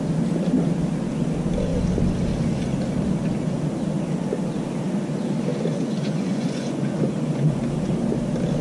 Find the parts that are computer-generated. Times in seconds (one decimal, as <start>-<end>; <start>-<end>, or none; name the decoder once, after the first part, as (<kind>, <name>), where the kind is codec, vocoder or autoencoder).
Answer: 5.5-7.6 (vocoder, Vocos)